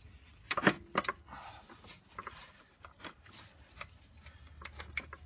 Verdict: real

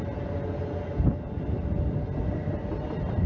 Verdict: real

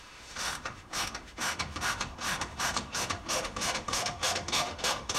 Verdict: fake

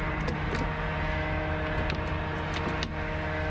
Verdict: real